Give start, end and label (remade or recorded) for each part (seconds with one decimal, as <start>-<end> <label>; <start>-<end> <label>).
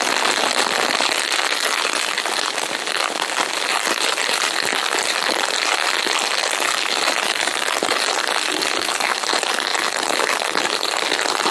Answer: 0.0-9.7 recorded; 9.7-11.0 remade; 11.0-11.5 recorded